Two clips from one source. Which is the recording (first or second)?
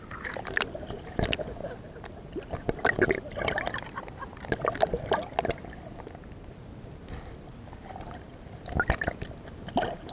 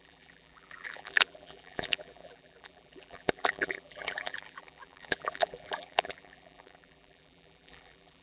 first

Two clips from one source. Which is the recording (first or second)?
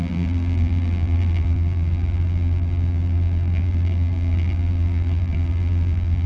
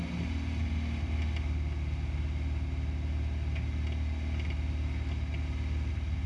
second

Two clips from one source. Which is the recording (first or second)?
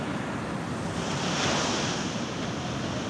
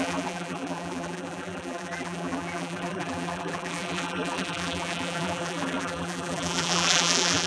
first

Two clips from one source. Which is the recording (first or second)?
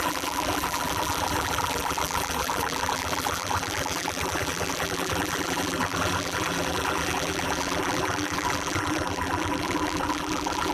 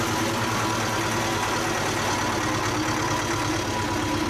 second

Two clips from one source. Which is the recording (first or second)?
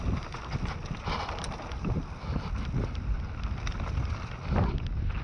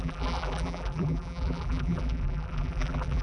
first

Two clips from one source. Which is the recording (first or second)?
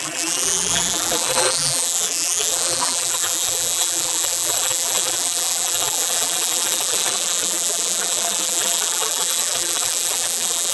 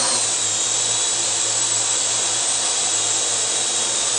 second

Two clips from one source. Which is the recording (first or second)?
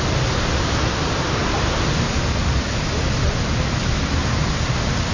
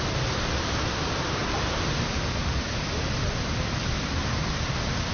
first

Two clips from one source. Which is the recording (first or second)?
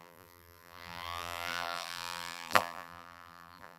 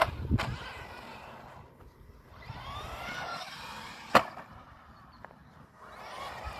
second